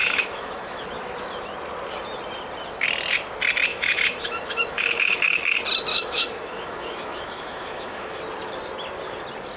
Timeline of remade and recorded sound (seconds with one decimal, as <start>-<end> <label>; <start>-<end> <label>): 0.0-0.8 remade; 0.8-3.7 recorded; 3.7-5.5 remade; 5.5-5.9 recorded; 5.9-8.2 remade; 8.2-9.6 recorded